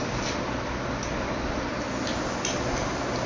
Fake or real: real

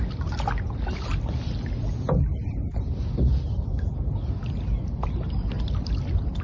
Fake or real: real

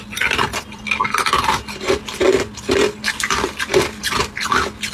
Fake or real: real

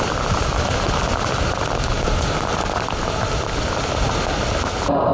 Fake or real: real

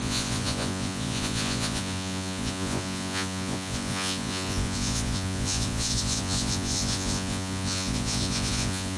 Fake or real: fake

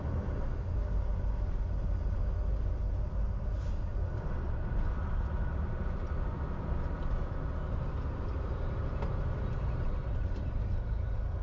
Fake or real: real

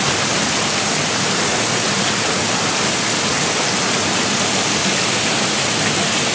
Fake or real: real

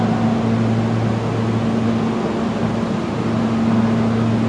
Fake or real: real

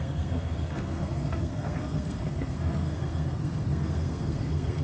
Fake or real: fake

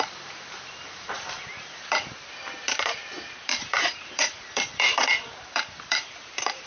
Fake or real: fake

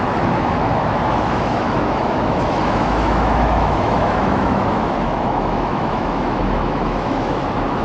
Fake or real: fake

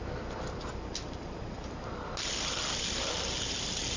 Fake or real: real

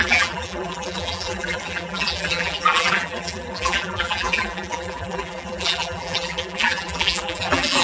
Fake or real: fake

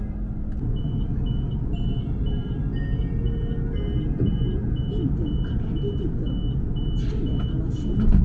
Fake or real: real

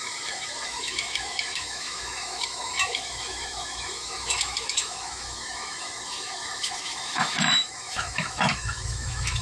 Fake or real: fake